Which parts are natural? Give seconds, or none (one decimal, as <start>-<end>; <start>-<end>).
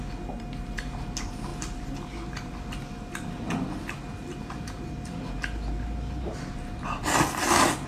0.0-7.9